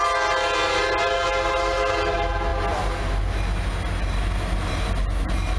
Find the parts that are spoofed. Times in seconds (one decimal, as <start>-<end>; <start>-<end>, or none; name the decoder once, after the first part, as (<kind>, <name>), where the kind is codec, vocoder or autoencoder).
none